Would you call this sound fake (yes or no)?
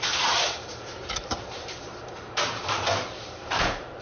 yes